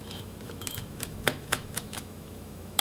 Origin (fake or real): fake